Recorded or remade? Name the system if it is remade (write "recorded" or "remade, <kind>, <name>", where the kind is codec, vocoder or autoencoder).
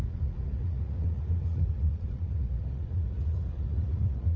remade, vocoder, Vocos